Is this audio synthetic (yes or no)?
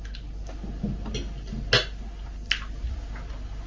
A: no